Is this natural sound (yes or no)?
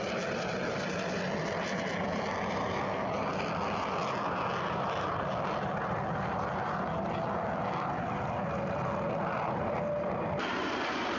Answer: yes